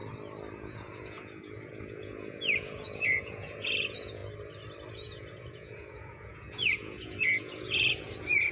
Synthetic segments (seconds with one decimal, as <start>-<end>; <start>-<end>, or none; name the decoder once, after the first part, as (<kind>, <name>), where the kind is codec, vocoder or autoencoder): 0.5-4.2 (vocoder, Vocos); 4.9-8.5